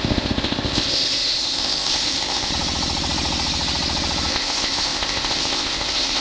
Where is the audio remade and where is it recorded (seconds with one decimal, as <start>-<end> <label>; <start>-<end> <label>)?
0.0-2.5 remade; 2.5-4.3 recorded; 4.3-6.2 remade